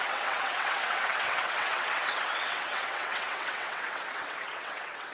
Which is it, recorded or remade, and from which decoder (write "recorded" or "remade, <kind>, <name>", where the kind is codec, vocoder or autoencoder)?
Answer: remade, vocoder, WaveNeXt